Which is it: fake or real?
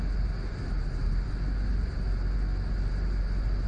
real